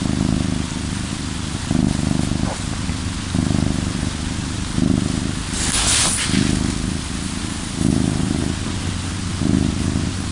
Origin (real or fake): real